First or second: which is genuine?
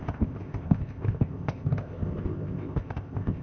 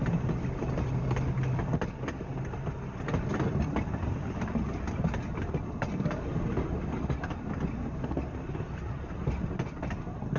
second